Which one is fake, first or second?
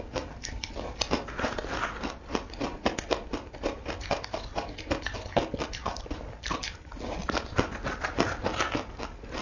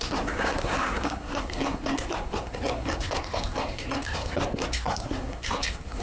second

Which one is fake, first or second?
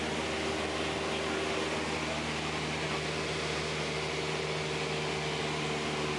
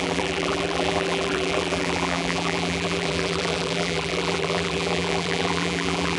second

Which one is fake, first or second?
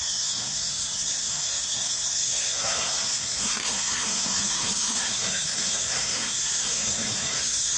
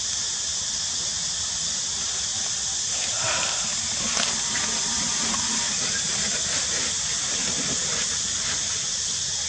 first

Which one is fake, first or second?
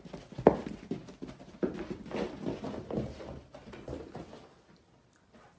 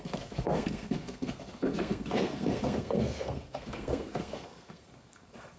second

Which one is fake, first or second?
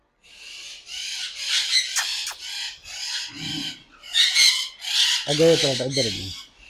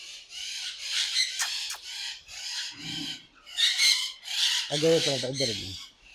second